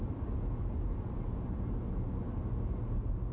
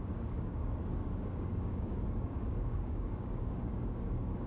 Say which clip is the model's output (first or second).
second